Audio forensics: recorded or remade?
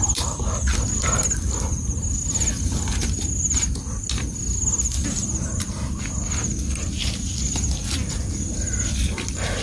recorded